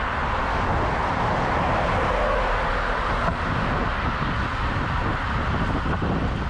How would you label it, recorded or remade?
recorded